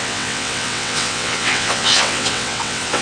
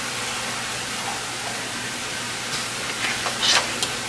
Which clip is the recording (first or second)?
second